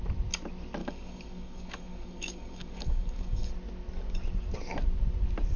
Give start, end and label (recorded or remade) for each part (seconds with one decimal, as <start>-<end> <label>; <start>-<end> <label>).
0.0-0.8 recorded; 0.8-3.5 remade; 3.5-5.6 recorded